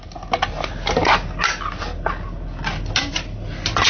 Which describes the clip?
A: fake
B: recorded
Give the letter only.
B